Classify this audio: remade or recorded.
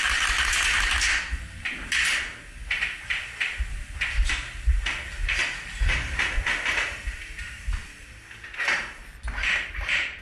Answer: recorded